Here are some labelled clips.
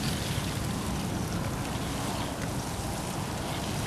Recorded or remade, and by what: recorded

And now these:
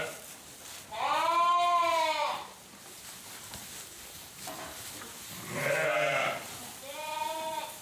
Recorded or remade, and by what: recorded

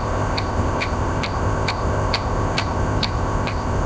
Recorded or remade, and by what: remade, codec, ZipCodec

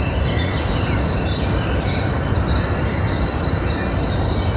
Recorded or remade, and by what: remade, vocoder, BigVGAN v2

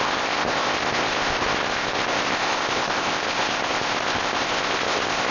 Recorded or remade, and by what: remade, codec, ZipCodec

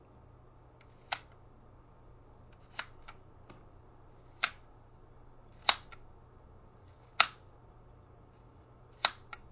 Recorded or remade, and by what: recorded